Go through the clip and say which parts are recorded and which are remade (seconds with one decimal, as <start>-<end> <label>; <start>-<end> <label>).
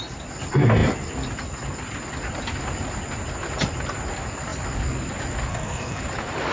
0.0-5.5 recorded; 5.5-6.0 remade; 6.0-6.5 recorded